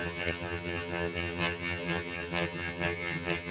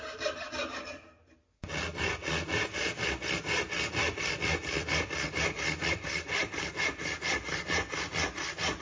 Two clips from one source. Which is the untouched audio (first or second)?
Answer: second